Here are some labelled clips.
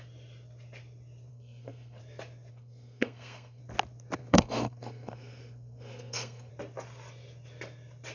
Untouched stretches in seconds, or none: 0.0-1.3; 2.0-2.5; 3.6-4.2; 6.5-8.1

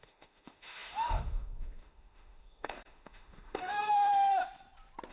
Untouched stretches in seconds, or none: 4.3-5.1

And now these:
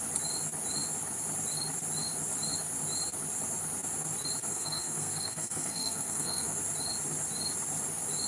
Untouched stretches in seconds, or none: 0.0-4.5; 6.6-8.3

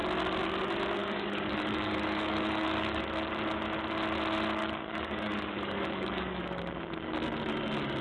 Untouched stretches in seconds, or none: 0.0-1.0; 3.0-4.6; 6.4-8.0

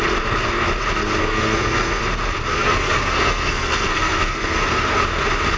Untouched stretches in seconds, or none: 0.0-1.2; 2.0-2.5; 5.0-5.6

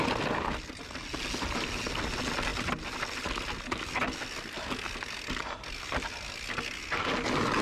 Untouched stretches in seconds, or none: 0.0-7.6

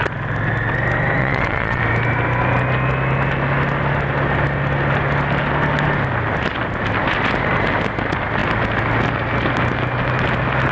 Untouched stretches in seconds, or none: 0.0-1.2; 1.8-10.7